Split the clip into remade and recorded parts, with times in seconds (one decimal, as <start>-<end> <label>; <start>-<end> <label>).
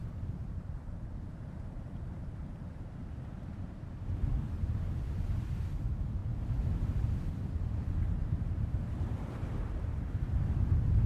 0.0-0.9 remade; 0.9-3.0 recorded; 3.0-3.7 remade; 3.7-6.2 recorded; 6.2-7.6 remade; 7.6-11.1 recorded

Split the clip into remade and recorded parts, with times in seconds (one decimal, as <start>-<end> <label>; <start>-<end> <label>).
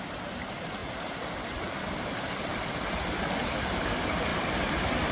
0.0-4.3 remade; 4.3-5.1 recorded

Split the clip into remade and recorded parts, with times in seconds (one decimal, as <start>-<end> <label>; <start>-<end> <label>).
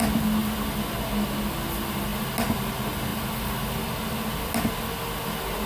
0.0-3.1 recorded; 3.1-3.6 remade; 3.6-5.7 recorded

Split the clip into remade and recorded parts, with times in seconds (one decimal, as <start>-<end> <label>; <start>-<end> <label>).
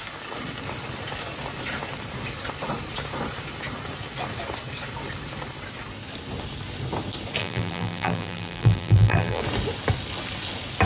0.0-7.4 recorded; 7.4-9.4 remade; 9.4-10.8 recorded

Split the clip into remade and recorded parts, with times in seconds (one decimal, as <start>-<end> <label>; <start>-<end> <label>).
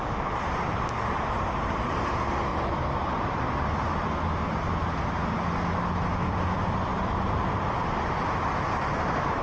0.0-2.5 recorded; 2.5-3.5 remade; 3.5-6.9 recorded; 6.9-7.5 remade; 7.5-9.4 recorded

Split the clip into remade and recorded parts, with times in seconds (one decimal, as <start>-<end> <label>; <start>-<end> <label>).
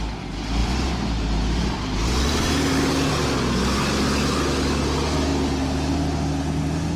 0.0-0.6 recorded; 0.6-3.1 remade; 3.1-7.0 recorded